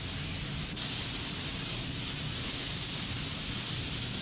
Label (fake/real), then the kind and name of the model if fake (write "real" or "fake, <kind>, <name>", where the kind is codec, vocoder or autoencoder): real